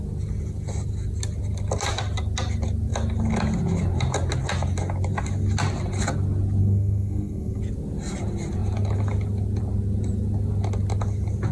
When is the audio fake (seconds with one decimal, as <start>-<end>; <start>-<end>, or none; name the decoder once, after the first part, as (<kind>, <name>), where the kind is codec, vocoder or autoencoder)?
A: 6.6-7.6 (codec, SNAC)